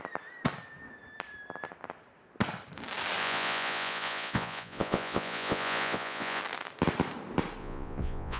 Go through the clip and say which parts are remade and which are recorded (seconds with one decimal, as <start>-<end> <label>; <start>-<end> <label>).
0.0-3.2 recorded; 3.2-6.4 remade; 6.4-7.6 recorded; 7.6-8.4 remade